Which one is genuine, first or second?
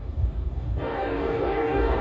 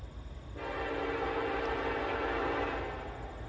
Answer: second